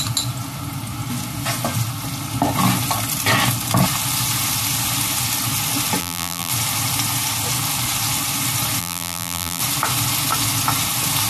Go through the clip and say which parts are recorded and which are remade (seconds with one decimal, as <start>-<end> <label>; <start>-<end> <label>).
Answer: 0.0-6.0 recorded; 6.0-6.5 remade; 6.5-8.8 recorded; 8.8-9.6 remade; 9.6-11.3 recorded